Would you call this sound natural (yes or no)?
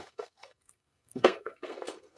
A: no